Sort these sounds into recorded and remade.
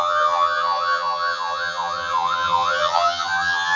remade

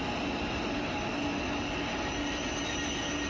recorded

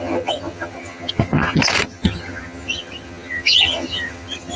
remade